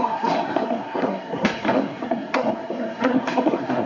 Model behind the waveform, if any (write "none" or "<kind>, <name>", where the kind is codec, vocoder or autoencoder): codec, SNAC